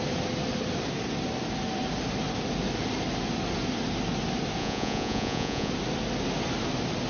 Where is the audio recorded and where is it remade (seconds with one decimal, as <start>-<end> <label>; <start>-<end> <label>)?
0.0-4.6 recorded; 4.6-5.7 remade; 5.7-7.1 recorded